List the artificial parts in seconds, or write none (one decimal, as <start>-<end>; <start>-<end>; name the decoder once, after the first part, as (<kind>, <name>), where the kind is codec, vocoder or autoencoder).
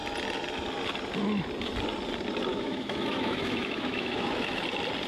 2.5-4.6 (autoencoder, DAC-VAE)